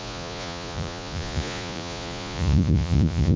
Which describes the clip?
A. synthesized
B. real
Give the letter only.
A